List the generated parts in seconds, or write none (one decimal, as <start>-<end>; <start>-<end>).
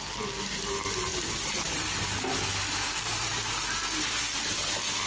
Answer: 1.1-4.2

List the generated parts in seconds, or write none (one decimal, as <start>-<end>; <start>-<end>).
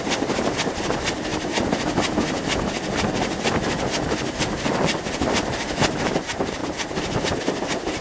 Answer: 0.0-1.3; 5.9-6.6; 7.4-8.0